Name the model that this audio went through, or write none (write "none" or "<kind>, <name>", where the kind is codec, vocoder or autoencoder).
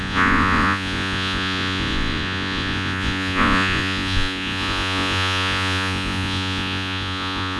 vocoder, Vocos